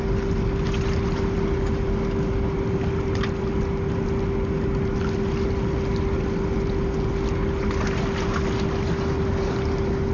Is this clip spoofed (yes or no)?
no